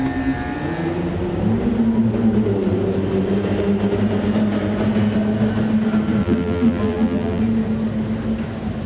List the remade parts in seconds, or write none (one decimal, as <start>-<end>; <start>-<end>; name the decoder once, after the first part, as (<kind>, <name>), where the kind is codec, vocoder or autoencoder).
6.2-7.4 (vocoder, BigVGAN v2)